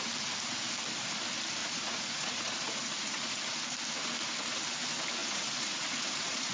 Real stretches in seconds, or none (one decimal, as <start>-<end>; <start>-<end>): 0.0-1.6; 3.4-5.2